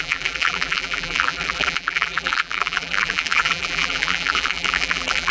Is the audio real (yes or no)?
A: no